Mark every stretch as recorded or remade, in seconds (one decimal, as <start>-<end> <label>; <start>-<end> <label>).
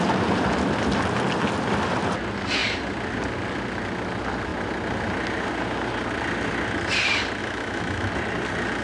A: 0.0-7.4 recorded; 7.4-8.1 remade; 8.1-8.8 recorded